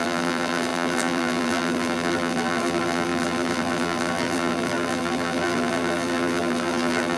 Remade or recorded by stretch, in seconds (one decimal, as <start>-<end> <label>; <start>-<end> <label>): 0.0-7.2 remade